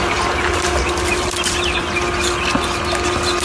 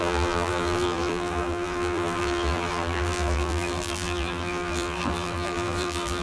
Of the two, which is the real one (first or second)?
first